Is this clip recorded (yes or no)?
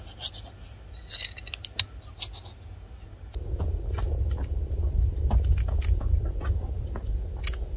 yes